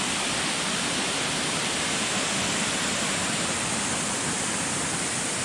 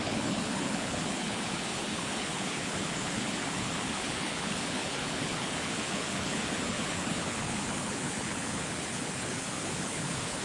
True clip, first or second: first